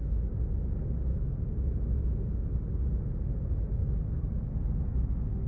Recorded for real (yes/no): yes